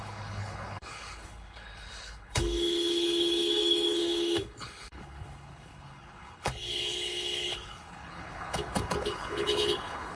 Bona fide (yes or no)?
no